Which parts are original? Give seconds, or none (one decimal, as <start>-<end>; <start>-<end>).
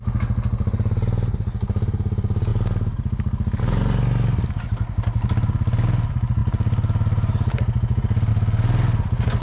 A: 0.0-9.4